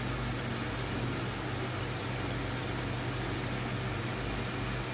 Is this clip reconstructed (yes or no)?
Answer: no